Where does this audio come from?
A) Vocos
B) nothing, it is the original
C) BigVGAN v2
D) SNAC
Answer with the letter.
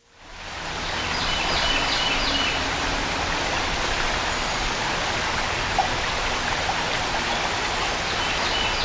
B